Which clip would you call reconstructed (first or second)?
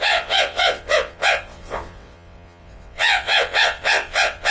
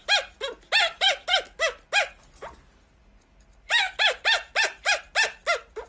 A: first